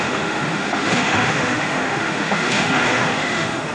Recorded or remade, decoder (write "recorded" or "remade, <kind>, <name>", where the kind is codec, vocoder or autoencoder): remade, autoencoder, DAC-VAE